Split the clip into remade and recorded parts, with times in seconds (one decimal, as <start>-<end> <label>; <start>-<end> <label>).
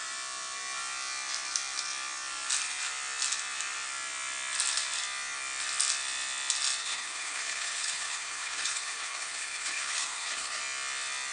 0.0-6.8 recorded; 6.8-10.6 remade; 10.6-11.3 recorded